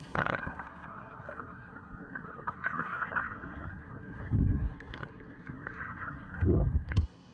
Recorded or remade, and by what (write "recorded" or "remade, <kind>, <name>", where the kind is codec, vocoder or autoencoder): remade, codec, SNAC